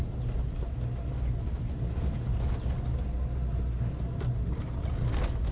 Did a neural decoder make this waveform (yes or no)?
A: no